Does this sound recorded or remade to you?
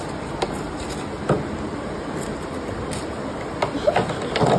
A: recorded